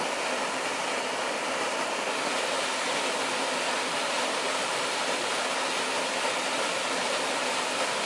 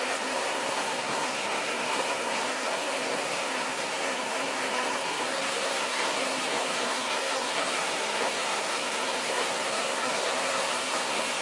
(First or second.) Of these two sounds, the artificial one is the second